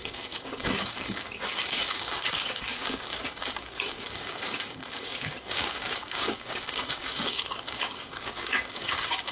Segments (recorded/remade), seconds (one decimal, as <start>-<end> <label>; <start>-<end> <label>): 0.0-9.3 remade